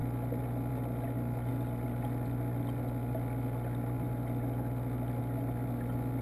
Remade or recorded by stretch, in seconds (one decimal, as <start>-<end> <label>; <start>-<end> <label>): 0.0-6.2 recorded